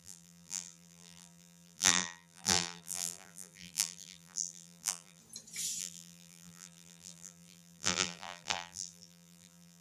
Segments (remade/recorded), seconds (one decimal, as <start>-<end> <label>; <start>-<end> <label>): 0.0-5.2 remade; 5.2-5.8 recorded; 5.8-9.8 remade